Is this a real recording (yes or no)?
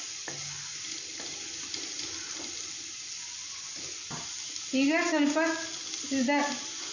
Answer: yes